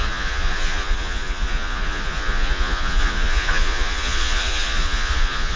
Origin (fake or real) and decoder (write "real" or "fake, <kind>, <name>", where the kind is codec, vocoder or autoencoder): fake, vocoder, Vocos